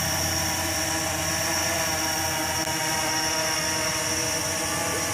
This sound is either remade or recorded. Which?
recorded